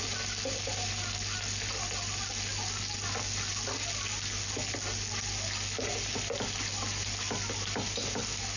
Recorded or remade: recorded